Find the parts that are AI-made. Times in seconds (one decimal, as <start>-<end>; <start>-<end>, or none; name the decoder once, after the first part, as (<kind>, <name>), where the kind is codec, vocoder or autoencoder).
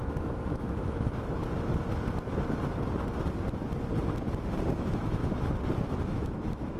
0.0-1.4 (autoencoder, DAC-VAE); 4.8-5.2; 5.8-6.8